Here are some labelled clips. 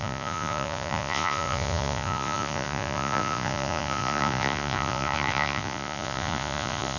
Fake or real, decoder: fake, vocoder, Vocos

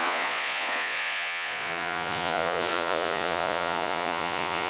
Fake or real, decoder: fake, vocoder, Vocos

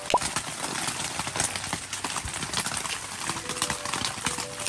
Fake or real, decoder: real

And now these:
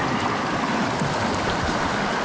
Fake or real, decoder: real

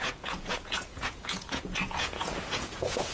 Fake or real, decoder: fake, vocoder, Vocos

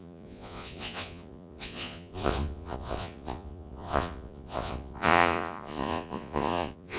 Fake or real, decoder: fake, vocoder, Vocos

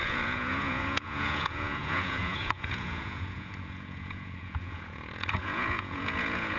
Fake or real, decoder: fake, vocoder, Vocos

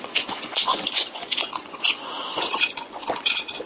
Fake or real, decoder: fake, vocoder, Vocos